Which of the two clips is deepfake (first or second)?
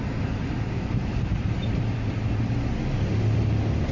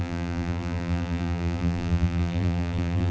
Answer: second